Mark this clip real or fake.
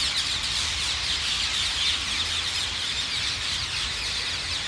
real